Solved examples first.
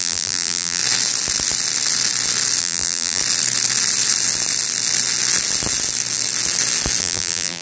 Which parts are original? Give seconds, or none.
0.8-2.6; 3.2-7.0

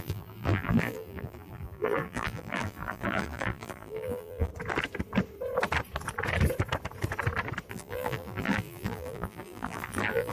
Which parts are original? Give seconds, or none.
4.5-7.7

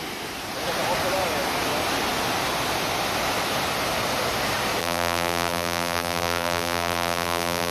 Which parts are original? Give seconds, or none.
0.0-4.8

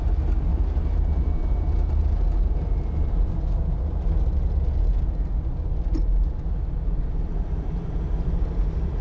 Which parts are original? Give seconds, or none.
0.0-7.3; 8.1-9.0

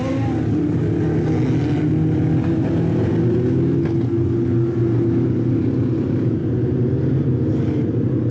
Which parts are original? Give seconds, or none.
0.8-4.8; 6.4-7.5

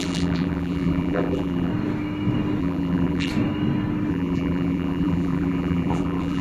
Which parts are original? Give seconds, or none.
1.7-2.6; 3.3-4.1

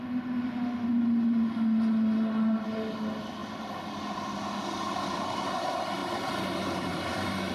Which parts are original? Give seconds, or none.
0.0-3.4; 4.2-6.0

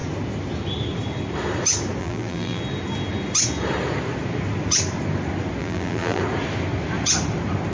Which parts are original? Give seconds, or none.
0.0-2.0; 2.6-5.6; 6.2-7.7